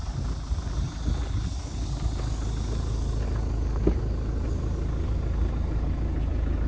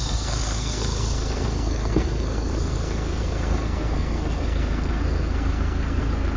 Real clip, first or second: first